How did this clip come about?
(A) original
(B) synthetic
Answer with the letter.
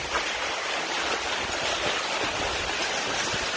A